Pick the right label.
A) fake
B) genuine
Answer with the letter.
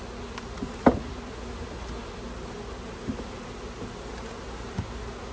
B